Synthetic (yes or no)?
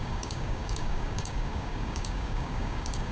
yes